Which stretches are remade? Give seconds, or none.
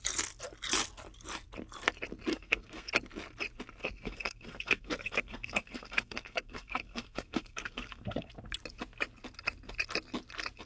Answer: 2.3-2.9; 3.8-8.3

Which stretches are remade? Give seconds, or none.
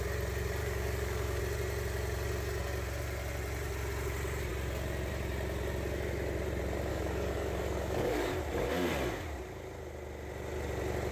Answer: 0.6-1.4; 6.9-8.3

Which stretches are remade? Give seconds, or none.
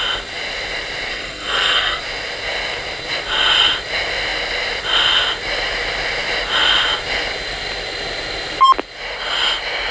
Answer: 1.1-2.0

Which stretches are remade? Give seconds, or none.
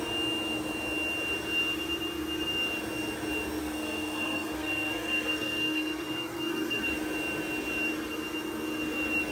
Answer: 3.6-6.9